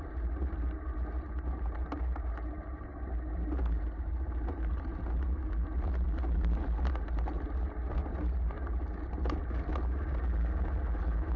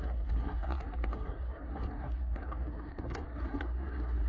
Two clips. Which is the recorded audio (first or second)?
first